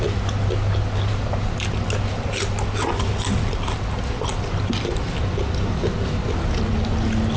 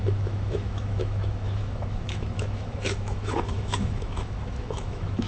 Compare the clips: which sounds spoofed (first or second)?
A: second